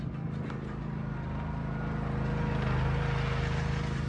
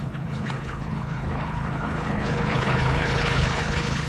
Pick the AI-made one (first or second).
second